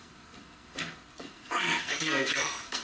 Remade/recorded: remade